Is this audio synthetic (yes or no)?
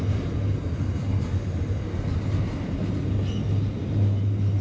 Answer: no